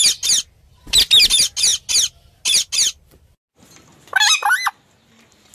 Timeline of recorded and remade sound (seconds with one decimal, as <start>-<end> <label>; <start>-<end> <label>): 0.0-5.5 recorded